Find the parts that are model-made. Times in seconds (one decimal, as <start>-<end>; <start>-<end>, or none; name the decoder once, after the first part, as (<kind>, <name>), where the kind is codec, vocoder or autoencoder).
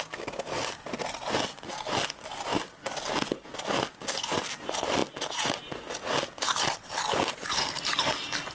none